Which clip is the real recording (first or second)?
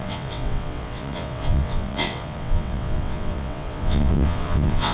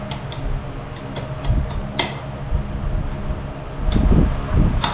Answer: second